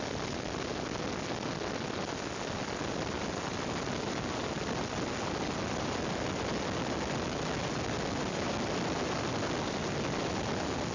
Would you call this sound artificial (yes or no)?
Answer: no